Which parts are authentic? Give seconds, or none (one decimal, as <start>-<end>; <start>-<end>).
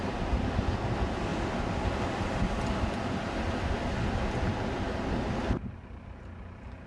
0.0-6.9